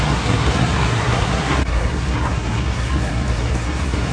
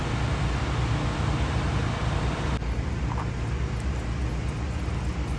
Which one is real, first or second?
second